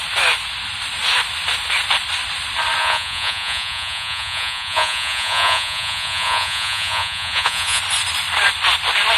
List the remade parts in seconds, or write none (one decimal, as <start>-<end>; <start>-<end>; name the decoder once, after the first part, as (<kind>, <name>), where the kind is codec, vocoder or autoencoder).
2.8-7.8 (vocoder, Vocos)